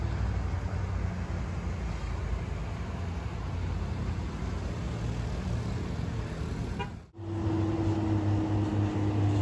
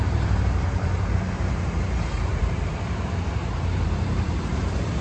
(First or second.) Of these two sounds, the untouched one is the first